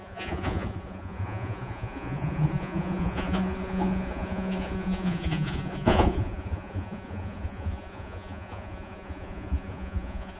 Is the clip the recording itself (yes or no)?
no